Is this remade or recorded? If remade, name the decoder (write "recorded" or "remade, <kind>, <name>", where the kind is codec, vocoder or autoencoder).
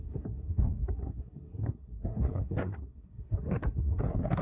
remade, codec, SNAC